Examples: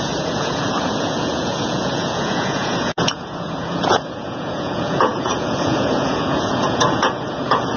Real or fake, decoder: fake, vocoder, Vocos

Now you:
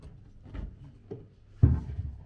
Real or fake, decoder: real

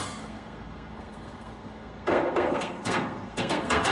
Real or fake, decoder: fake, codec, SNAC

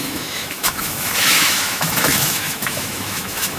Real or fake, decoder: fake, autoencoder, DAC-VAE